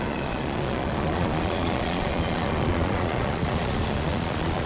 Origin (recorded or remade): remade